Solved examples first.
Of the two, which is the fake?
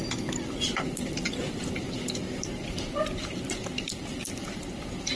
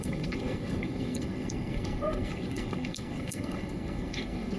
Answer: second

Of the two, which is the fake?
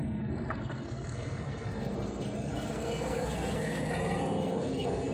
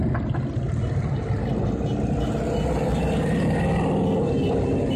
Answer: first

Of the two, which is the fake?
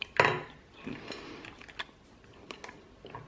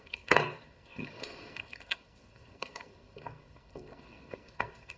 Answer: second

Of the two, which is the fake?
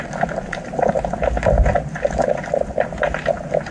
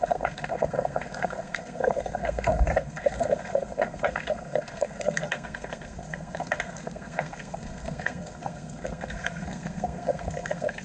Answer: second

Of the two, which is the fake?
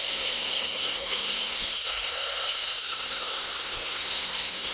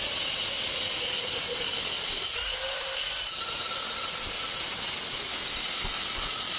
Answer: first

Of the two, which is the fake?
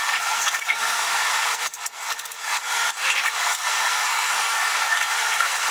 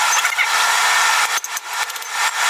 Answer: first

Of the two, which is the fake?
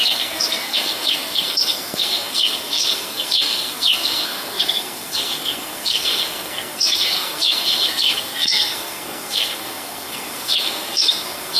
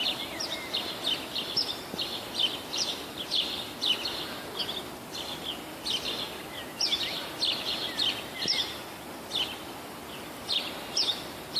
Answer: first